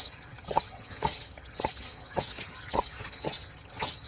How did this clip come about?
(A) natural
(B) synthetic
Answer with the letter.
B